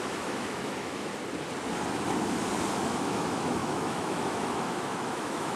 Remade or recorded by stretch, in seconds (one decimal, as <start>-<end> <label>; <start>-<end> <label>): 0.0-1.1 remade; 1.1-2.7 recorded; 2.7-5.6 remade